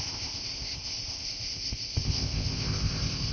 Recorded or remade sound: remade